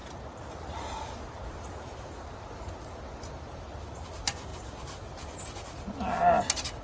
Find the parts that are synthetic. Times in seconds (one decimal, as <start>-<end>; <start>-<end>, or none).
none